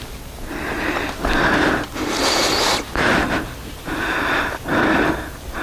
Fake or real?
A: real